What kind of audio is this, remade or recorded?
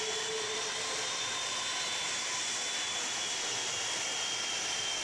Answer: recorded